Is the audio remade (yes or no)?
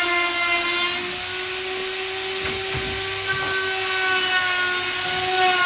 no